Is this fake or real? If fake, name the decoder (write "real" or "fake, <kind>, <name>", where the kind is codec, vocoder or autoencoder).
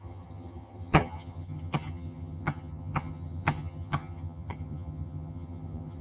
fake, vocoder, HiFi-GAN